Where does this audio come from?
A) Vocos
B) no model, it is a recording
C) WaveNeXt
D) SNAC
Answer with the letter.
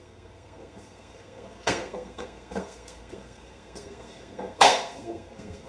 D